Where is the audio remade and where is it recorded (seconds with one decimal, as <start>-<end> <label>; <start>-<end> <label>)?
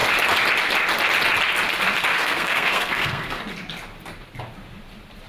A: 0.0-2.1 recorded; 2.1-3.4 remade; 3.4-5.3 recorded